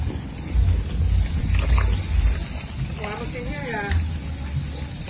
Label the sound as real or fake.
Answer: real